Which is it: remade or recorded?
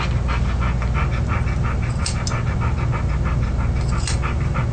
recorded